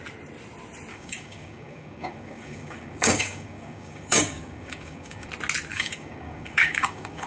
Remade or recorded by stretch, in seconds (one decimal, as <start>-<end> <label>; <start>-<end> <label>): 0.0-0.9 recorded; 0.9-5.3 remade; 5.3-5.7 recorded; 5.7-7.3 remade

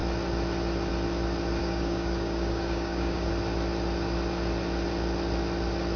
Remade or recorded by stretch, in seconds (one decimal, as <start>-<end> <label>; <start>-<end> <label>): 0.0-1.6 recorded; 1.6-3.3 remade; 3.3-6.0 recorded

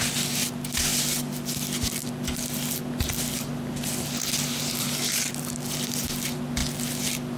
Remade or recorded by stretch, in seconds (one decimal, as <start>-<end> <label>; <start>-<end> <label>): 0.0-7.4 recorded